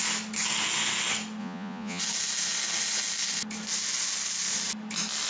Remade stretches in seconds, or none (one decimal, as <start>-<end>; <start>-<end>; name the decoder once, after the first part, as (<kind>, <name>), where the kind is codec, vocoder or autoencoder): 1.4-2.0 (vocoder, Vocos)